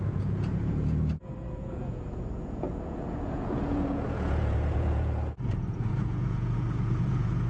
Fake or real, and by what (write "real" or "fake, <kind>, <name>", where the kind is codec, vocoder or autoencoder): fake, vocoder, Vocos